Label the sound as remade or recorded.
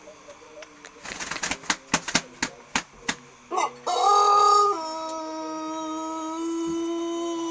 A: recorded